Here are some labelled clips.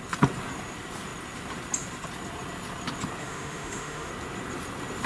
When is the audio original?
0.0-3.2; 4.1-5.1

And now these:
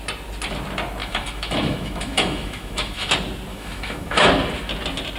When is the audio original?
0.0-1.0; 3.1-3.5; 4.3-5.2

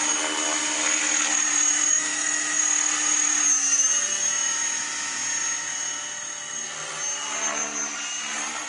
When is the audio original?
0.0-1.9; 2.6-8.7

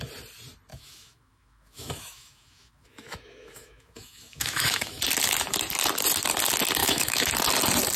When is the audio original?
0.0-0.7; 5.0-6.8; 7.3-8.0